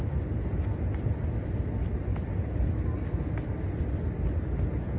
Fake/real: real